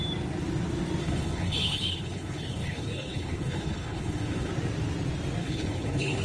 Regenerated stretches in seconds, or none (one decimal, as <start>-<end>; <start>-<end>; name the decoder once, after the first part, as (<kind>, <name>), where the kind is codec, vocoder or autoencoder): 1.0-4.5 (codec, HILCodec); 5.4-6.2